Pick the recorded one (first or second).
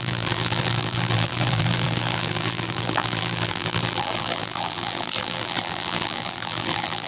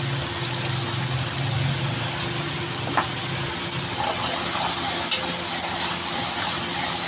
second